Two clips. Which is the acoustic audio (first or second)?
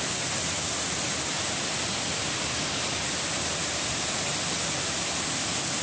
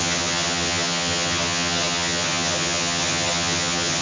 first